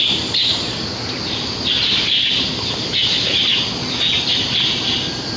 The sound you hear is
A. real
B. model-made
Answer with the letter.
A